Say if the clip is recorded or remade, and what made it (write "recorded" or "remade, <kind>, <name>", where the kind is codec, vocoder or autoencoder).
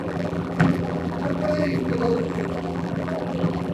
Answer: remade, vocoder, BigVGAN v2